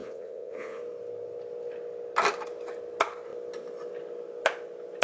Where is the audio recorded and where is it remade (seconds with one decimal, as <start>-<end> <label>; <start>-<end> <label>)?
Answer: 0.0-0.8 remade; 0.8-5.0 recorded